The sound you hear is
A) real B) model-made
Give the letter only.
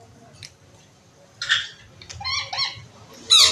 A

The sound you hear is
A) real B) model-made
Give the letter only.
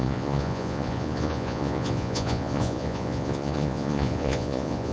B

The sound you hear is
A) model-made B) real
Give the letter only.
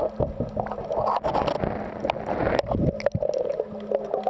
B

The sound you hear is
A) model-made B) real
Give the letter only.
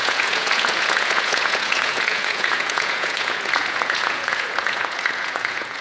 A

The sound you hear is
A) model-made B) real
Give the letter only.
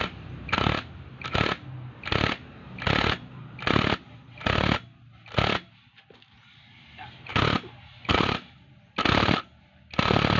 B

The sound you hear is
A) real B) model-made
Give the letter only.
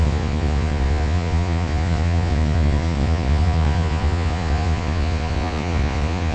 B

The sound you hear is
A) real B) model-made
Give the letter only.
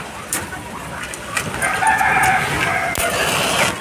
A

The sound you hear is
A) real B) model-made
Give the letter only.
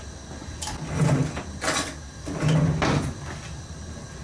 A